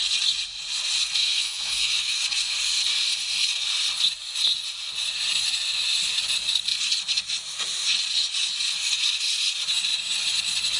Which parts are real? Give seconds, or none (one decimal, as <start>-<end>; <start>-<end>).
0.0-1.2; 2.2-10.8